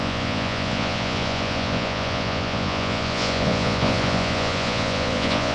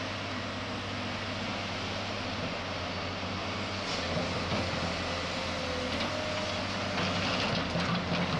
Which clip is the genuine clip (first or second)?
second